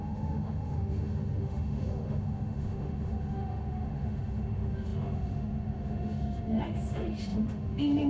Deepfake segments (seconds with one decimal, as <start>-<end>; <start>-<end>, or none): 0.0-8.1